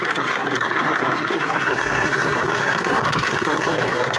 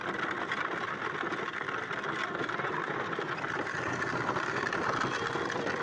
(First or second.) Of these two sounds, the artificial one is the first